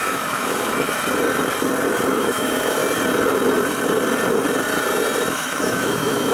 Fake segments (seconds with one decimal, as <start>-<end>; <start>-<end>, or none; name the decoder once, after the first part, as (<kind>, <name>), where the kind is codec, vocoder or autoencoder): 0.0-1.0 (autoencoder, DAC-VAE); 2.2-2.8; 5.3-6.3